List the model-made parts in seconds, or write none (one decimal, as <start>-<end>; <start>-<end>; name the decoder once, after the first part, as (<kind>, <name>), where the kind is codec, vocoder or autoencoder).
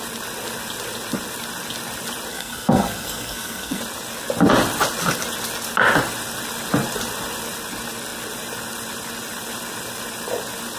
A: 2.3-3.8 (codec, SNAC)